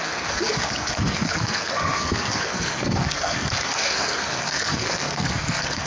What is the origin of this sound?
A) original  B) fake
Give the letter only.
B